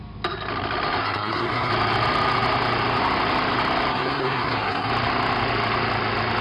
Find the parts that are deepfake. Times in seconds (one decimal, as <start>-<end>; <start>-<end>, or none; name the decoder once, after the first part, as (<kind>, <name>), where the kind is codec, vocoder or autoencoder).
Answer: 1.0-1.7 (codec, SNAC); 3.9-4.9